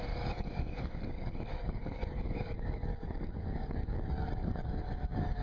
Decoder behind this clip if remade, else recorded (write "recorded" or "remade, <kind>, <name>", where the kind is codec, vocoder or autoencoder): remade, codec, DAC